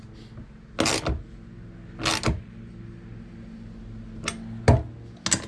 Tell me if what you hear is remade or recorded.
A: recorded